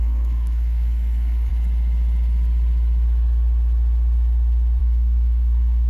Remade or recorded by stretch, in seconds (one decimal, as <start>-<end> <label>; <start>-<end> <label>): 0.0-1.5 remade; 1.5-4.8 recorded; 4.8-5.9 remade